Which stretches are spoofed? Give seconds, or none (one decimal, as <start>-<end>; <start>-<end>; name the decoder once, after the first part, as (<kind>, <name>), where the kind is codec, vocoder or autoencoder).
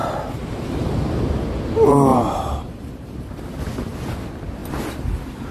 2.1-3.6 (vocoder, BigVGAN v2)